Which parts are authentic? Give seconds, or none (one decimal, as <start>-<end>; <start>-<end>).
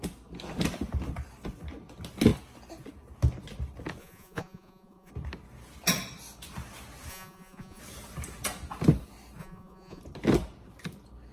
0.0-4.0; 5.1-7.1; 7.8-9.4; 10.0-11.3